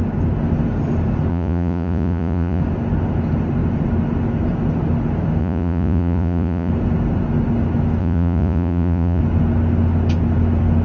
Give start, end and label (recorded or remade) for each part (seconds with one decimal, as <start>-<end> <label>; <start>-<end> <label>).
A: 0.0-1.3 recorded; 1.3-2.6 remade; 2.6-5.4 recorded; 5.4-6.7 remade; 6.7-8.0 recorded; 8.0-9.2 remade; 9.2-10.8 recorded